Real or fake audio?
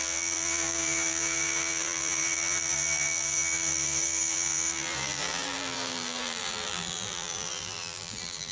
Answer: fake